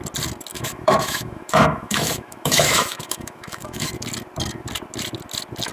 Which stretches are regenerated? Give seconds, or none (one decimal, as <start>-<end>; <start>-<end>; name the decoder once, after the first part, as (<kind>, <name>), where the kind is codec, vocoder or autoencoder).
0.5-3.9 (autoencoder, DAC-VAE)